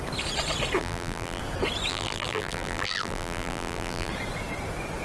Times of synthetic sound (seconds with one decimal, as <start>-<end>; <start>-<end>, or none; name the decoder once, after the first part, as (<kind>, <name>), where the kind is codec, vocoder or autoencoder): 0.8-1.4 (vocoder, BigVGAN v2); 1.9-4.1